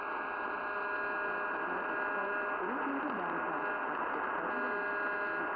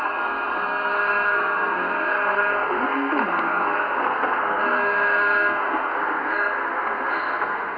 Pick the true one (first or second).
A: first